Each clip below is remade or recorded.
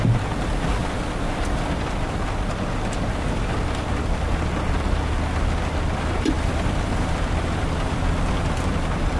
recorded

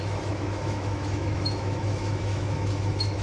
remade